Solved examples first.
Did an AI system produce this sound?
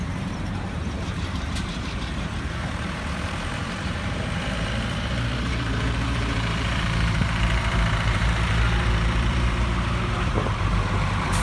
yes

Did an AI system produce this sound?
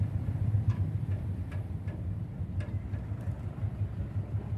yes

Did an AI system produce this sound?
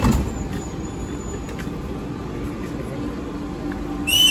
no